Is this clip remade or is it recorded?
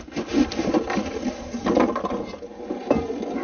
recorded